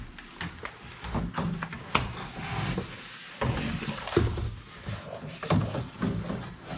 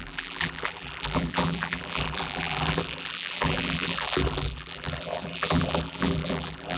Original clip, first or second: first